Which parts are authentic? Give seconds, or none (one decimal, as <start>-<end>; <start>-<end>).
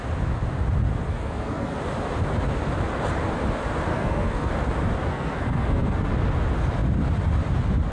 0.0-1.1; 1.8-3.9; 4.5-5.1; 6.1-7.9